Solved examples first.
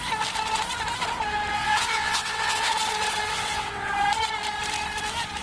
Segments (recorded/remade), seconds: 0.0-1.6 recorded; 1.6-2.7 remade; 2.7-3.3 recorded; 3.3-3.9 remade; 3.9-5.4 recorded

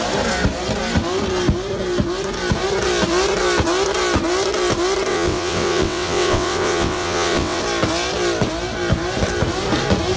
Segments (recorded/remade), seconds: 0.0-5.1 recorded; 5.1-7.6 remade; 7.6-10.2 recorded

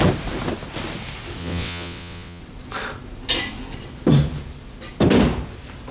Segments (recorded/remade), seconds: 0.0-1.4 recorded; 1.4-2.4 remade; 2.4-5.9 recorded

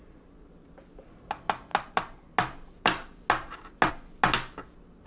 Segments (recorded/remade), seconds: 0.0-5.1 recorded